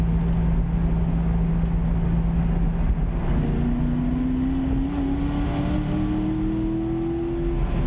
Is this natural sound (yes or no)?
yes